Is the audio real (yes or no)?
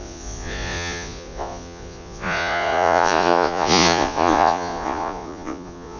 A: no